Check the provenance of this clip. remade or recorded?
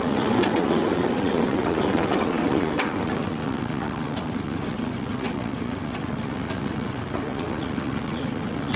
remade